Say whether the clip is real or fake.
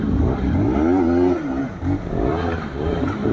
real